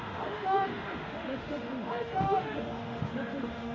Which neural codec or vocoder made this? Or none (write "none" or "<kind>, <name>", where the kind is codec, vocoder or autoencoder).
autoencoder, DAC-VAE